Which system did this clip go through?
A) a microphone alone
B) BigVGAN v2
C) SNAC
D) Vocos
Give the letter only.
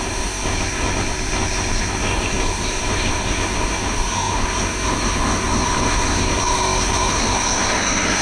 C